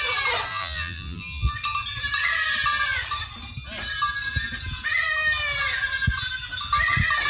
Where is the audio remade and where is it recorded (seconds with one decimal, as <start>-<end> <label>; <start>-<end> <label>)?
0.0-0.5 recorded; 0.5-1.5 remade; 1.5-7.3 recorded